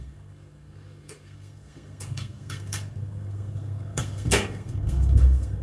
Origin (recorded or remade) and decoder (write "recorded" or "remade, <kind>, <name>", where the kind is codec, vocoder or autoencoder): remade, codec, SNAC